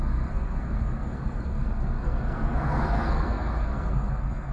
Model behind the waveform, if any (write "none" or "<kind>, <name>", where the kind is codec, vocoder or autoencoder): codec, SNAC